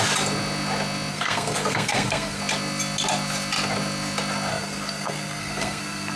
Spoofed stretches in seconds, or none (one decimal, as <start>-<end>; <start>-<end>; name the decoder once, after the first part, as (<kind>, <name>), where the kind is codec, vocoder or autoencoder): 1.1-2.4 (codec, SNAC); 4.5-6.2